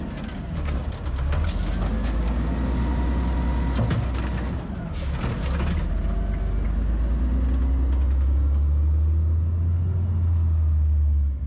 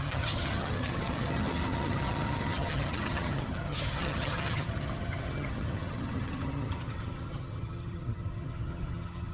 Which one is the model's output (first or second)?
second